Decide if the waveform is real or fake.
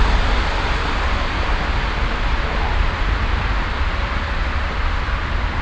real